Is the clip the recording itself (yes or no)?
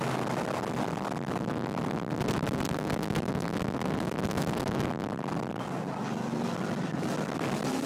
yes